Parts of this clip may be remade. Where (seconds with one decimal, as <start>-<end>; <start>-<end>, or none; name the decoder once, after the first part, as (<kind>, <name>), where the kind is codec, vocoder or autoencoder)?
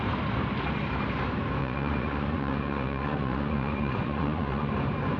1.6-4.7 (vocoder, Vocos)